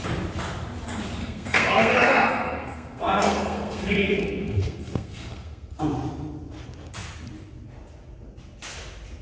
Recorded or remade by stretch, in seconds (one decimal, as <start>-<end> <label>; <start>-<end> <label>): 0.0-1.2 recorded; 1.2-5.8 remade; 5.8-9.2 recorded